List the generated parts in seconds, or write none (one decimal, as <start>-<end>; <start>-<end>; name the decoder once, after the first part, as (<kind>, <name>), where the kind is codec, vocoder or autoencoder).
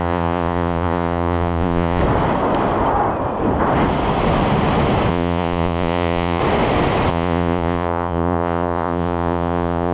0.0-2.0 (vocoder, Vocos); 5.1-6.4; 7.1-9.9